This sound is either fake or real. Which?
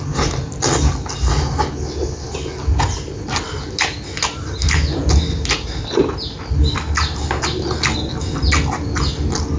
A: real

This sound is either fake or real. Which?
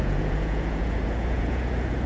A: fake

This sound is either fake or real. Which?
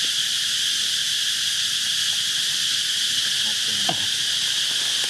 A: real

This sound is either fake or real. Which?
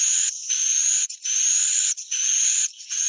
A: fake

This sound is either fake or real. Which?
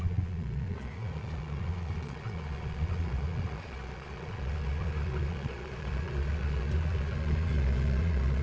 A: fake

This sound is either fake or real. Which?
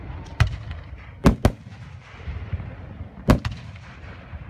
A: real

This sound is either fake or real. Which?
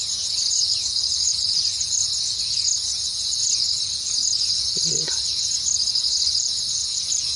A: fake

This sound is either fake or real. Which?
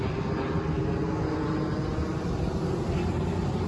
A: real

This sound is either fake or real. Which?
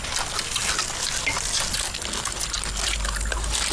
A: real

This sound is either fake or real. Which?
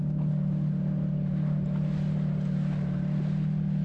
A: real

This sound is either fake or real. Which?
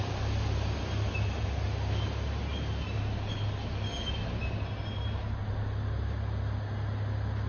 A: real